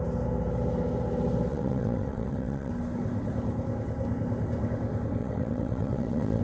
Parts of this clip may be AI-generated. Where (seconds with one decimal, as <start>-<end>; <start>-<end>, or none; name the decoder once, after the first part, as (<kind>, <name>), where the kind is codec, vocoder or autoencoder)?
1.5-2.7 (vocoder, WaveNeXt); 5.2-6.4